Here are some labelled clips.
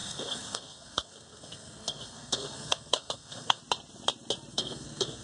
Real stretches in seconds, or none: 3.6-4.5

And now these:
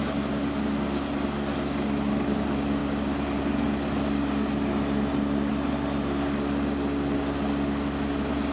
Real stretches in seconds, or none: 0.0-8.5